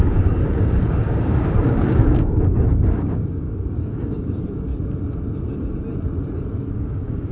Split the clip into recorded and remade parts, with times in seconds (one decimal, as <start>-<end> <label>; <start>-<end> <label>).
0.0-4.7 remade; 4.7-6.7 recorded; 6.7-7.3 remade